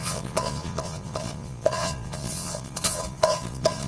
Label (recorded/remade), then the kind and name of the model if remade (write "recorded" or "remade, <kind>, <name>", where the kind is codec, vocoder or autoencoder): remade, vocoder, Vocos